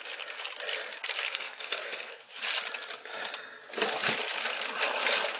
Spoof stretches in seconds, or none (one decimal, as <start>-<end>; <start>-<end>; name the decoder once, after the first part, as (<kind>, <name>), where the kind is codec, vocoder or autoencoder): 1.3-2.2 (codec, SNAC)